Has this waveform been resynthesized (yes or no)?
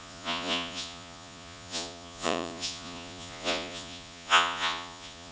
yes